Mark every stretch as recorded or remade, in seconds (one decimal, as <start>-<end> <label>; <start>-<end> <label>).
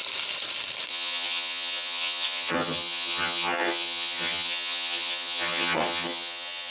0.0-0.9 recorded; 0.9-6.7 remade